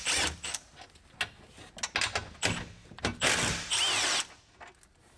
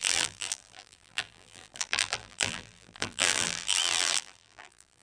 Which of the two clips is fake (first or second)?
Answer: second